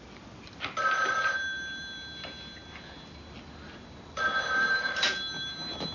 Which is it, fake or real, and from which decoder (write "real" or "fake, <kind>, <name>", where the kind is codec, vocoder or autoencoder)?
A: real